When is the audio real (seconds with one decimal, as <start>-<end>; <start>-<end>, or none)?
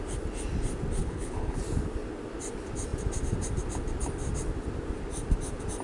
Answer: 0.0-1.0; 1.6-5.8